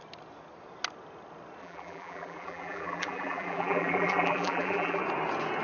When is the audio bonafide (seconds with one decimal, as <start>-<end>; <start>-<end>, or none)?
0.0-1.6; 5.0-5.6